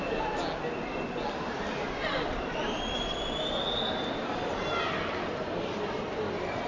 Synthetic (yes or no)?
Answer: no